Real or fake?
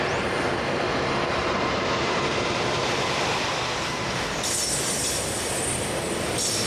real